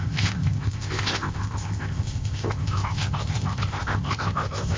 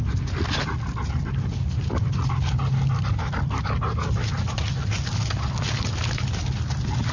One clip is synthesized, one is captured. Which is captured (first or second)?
second